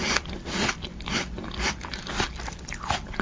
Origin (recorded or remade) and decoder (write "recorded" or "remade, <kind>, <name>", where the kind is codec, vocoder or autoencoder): recorded